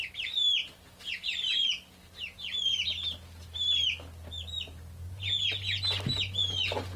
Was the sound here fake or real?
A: real